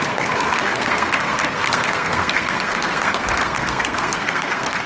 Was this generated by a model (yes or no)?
yes